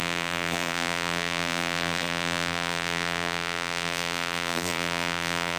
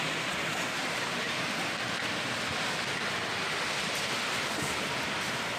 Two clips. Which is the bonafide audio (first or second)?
second